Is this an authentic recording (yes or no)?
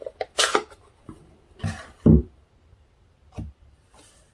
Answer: yes